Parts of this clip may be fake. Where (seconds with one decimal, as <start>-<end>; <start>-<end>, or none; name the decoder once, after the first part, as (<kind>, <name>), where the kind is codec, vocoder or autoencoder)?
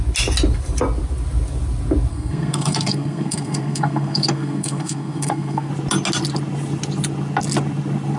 2.1-5.7 (codec, SNAC)